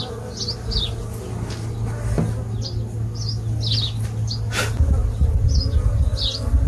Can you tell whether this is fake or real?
real